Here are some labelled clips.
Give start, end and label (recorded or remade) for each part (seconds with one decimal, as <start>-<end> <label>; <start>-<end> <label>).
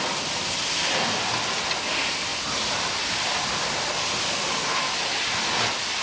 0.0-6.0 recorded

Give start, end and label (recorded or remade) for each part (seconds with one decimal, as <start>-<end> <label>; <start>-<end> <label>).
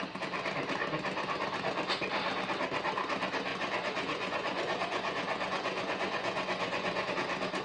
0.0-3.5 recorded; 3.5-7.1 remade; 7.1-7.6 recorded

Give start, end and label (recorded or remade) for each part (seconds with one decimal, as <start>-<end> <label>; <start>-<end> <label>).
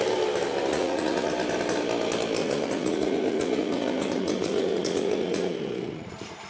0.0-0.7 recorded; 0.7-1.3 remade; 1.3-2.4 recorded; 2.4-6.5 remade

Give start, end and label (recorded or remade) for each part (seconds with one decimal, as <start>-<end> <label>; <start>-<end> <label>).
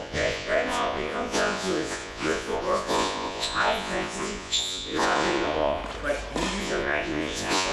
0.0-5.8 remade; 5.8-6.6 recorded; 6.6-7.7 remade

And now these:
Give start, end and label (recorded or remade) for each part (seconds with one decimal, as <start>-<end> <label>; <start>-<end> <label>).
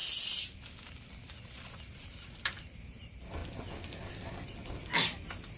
0.0-5.6 recorded